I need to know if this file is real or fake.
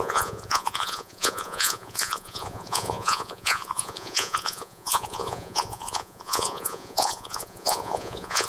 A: fake